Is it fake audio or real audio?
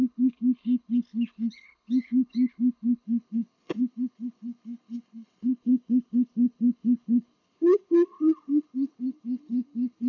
fake